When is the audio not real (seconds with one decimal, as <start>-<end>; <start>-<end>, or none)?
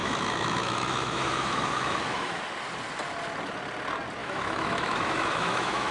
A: 0.0-2.4; 4.2-5.9